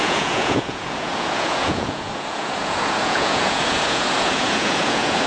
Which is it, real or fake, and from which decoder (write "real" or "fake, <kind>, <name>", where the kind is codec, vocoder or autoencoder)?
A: fake, vocoder, Vocos